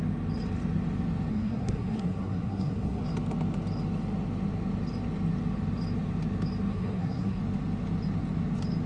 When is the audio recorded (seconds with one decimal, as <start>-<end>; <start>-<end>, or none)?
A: 0.0-1.3; 3.0-6.7; 7.4-8.9